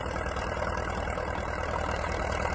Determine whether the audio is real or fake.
fake